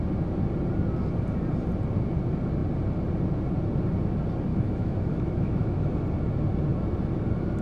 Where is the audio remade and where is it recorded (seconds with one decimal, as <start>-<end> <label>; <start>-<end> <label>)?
0.0-4.5 recorded; 4.5-5.9 remade; 5.9-7.6 recorded